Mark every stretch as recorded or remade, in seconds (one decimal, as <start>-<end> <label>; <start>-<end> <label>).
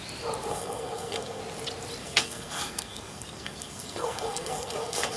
0.0-0.5 recorded; 0.5-1.4 remade; 1.4-2.0 recorded; 2.0-5.2 remade